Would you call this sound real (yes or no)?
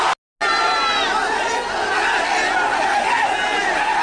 yes